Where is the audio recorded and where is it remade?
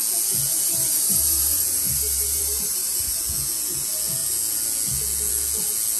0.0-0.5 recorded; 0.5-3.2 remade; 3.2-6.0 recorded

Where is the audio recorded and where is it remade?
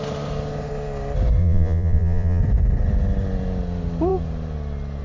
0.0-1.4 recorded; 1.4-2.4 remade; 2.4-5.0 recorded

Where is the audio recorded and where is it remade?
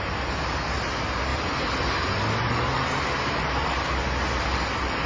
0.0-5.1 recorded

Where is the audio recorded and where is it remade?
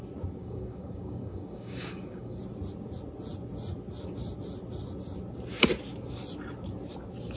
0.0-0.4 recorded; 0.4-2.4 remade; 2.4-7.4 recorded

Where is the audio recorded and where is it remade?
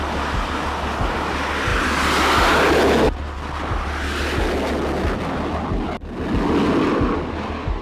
0.0-7.8 recorded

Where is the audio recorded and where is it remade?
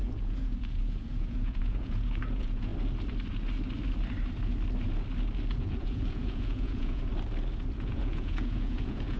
0.0-2.7 remade; 2.7-5.5 recorded; 5.5-7.1 remade; 7.1-7.8 recorded; 7.8-9.2 remade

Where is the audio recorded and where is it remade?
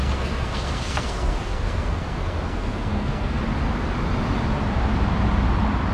0.0-3.4 remade; 3.4-5.9 recorded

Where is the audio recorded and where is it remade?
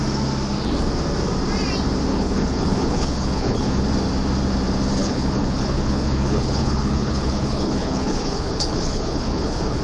0.0-2.1 recorded; 2.1-3.8 remade; 3.8-5.0 recorded; 5.0-9.8 remade